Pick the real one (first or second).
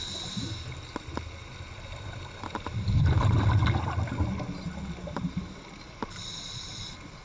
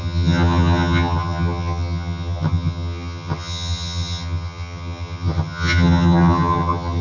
first